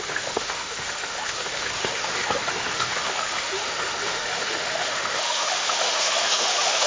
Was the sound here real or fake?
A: fake